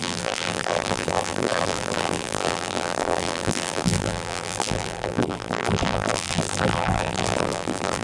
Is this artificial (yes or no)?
yes